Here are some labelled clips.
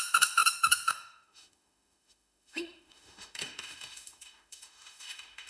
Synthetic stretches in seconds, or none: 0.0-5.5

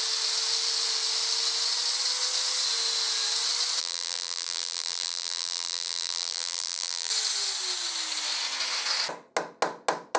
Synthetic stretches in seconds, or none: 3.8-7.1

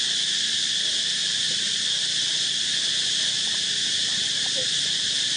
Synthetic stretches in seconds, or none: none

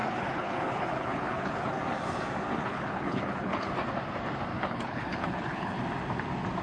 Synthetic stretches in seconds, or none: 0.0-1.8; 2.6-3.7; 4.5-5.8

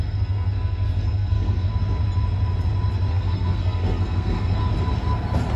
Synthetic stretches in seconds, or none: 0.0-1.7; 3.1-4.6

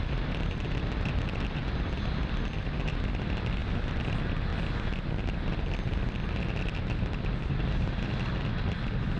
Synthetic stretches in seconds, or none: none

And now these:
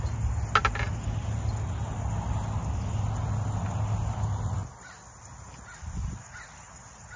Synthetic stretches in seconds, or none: none

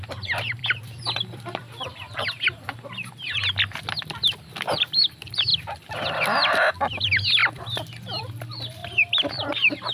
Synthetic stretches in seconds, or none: 0.0-3.4; 4.0-9.9